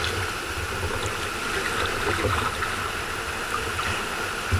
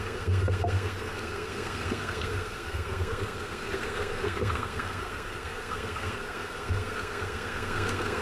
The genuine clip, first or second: first